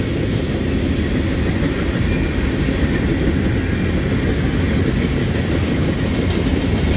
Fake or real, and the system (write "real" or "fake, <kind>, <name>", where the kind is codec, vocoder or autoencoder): real